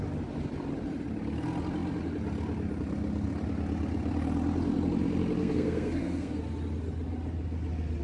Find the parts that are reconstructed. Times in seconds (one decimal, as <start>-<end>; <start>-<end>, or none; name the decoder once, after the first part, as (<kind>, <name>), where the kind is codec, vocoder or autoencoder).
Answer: 5.4-6.4 (codec, SNAC)